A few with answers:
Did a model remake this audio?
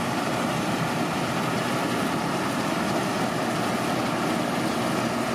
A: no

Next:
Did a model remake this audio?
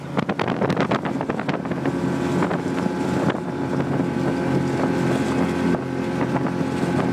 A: no